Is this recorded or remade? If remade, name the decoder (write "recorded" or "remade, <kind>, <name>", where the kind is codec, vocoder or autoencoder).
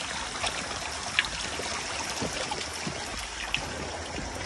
recorded